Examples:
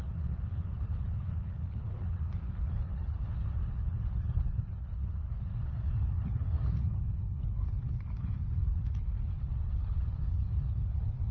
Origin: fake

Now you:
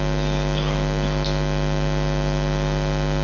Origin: real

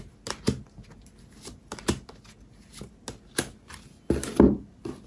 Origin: real